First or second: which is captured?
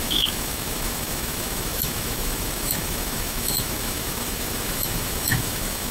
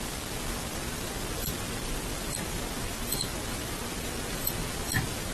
second